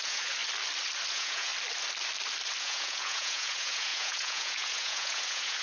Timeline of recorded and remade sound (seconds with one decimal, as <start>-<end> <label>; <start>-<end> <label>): 0.0-0.4 remade; 0.4-1.1 recorded; 1.1-1.5 remade; 1.5-2.6 recorded; 2.6-5.6 remade